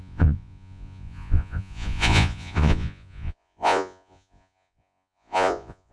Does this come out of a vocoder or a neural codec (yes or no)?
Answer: yes